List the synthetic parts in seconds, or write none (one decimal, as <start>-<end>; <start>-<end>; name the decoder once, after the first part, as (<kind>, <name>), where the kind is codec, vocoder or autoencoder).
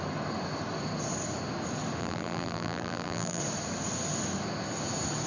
2.0-3.4 (vocoder, BigVGAN v2)